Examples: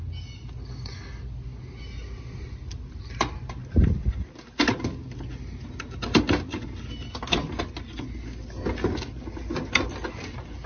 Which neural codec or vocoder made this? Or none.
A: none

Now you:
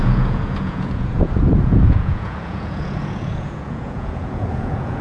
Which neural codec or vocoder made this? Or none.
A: vocoder, Vocos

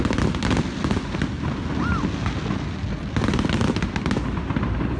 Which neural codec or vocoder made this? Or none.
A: none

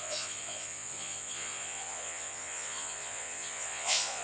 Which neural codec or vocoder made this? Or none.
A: vocoder, Vocos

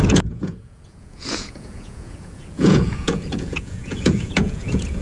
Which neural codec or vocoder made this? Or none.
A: vocoder, Vocos